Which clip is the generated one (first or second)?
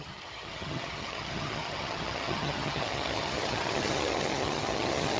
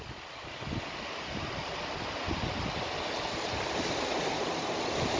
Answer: first